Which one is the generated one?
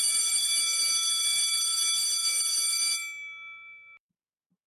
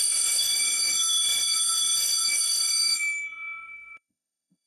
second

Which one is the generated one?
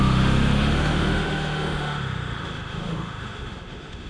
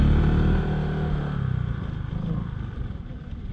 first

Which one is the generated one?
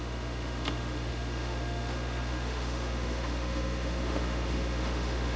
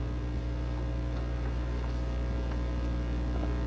first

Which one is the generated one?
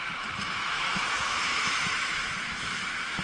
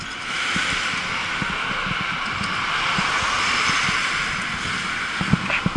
first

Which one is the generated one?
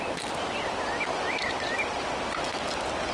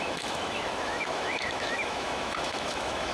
second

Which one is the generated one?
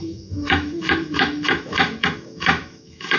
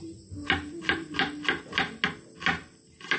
first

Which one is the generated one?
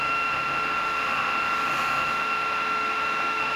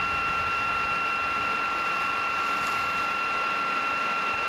first